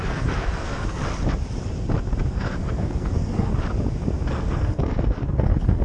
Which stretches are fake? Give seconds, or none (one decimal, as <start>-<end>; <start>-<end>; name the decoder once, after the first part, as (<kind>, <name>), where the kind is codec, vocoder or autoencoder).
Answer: 0.0-1.0 (codec, SNAC); 2.3-3.5; 4.3-5.8